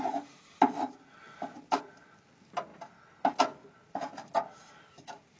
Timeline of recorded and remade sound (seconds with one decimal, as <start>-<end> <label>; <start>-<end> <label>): 0.0-5.4 recorded